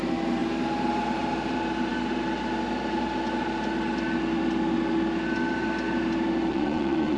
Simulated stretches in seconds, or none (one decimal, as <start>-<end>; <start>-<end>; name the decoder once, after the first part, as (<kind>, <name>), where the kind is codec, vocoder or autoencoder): 6.5-7.2 (vocoder, Vocos)

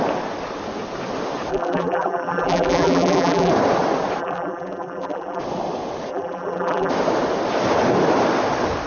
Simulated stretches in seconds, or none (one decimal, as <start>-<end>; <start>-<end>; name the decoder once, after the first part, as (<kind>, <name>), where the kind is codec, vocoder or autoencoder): 1.5-3.5 (vocoder, BigVGAN v2); 4.2-5.4; 6.1-6.9